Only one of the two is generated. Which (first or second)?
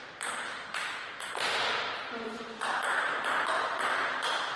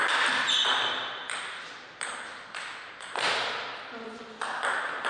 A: first